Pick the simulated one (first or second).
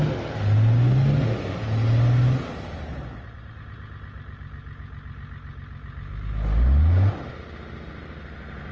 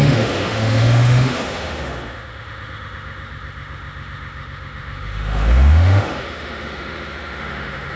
second